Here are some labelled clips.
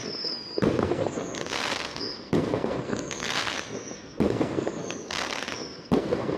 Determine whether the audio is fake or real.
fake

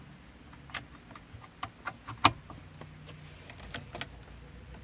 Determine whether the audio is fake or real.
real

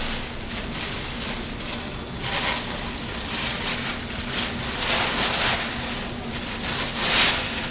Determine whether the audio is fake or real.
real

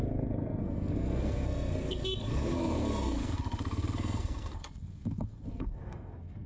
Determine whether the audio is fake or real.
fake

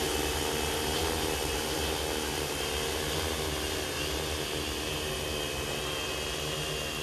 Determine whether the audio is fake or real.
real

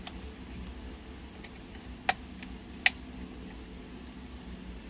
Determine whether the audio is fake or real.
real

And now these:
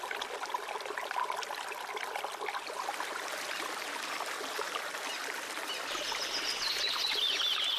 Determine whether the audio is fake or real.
real